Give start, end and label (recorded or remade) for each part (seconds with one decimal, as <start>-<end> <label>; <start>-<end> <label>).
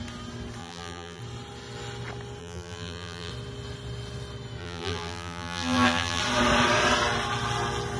0.0-0.6 recorded; 0.6-1.2 remade; 1.2-2.4 recorded; 2.4-3.3 remade; 3.3-4.6 recorded; 4.6-6.2 remade; 6.2-8.0 recorded